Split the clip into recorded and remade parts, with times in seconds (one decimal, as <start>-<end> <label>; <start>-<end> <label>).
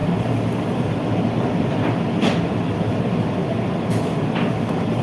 0.0-5.0 recorded